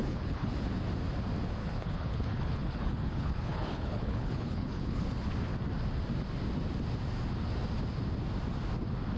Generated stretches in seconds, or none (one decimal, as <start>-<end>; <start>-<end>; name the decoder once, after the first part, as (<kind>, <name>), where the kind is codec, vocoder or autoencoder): 0.0-0.8 (codec, HILCodec); 1.6-5.3

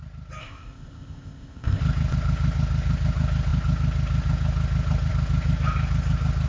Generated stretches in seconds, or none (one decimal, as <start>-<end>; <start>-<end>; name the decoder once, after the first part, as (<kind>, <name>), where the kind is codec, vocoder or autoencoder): 0.4-1.8 (codec, ZipCodec)